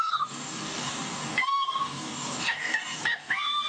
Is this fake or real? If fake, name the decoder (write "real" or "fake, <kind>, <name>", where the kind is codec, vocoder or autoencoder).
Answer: fake, codec, DAC